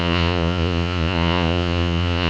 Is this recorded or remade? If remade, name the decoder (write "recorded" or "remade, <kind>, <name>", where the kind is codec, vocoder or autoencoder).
remade, vocoder, Vocos